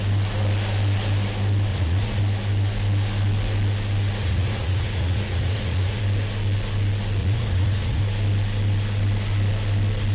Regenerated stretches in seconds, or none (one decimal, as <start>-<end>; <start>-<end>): 1.7-2.2; 4.2-6.0; 7.2-8.0